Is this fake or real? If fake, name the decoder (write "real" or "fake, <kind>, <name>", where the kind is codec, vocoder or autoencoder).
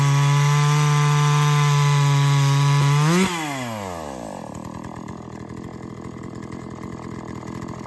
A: real